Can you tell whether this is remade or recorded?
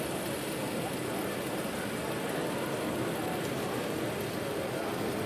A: recorded